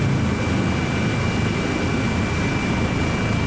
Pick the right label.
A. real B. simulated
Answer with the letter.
A